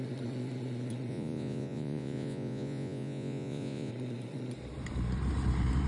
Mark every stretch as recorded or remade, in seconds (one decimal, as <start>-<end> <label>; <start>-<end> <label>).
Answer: 0.0-1.1 recorded; 1.1-3.9 remade; 3.9-5.9 recorded